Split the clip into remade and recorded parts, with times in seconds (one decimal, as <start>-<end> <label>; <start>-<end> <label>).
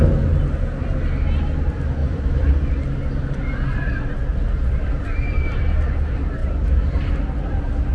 0.0-2.0 recorded; 2.0-2.5 remade; 2.5-4.3 recorded; 4.3-5.6 remade; 5.6-6.4 recorded; 6.4-7.1 remade; 7.1-7.9 recorded